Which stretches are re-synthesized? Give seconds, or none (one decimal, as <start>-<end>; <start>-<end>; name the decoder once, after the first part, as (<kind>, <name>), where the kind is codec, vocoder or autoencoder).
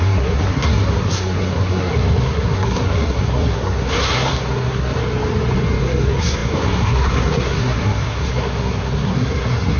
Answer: 0.0-5.0 (codec, SNAC); 5.8-9.8